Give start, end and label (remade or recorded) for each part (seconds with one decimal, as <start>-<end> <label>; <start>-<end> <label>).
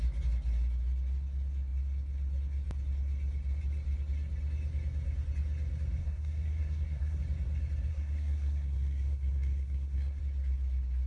0.0-6.0 recorded; 6.0-7.2 remade; 7.2-7.9 recorded; 7.9-10.2 remade; 10.2-11.1 recorded